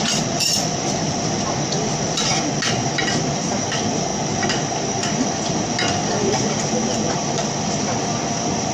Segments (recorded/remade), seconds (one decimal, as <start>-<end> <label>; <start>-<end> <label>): 0.0-2.3 remade; 2.3-3.1 recorded; 3.1-4.1 remade; 4.1-4.7 recorded; 4.7-6.3 remade; 6.3-7.1 recorded; 7.1-8.7 remade